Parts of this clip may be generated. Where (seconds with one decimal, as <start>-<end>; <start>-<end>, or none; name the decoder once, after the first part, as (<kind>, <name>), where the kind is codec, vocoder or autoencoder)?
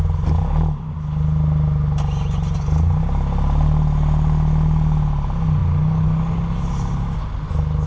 none